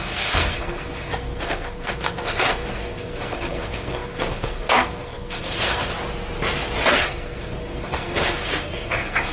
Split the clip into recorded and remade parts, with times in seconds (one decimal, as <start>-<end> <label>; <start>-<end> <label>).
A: 0.0-5.9 remade; 5.9-6.9 recorded; 6.9-9.3 remade